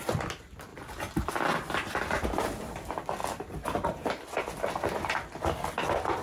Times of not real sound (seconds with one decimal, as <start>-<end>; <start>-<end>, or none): 0.7-1.3; 3.2-4.4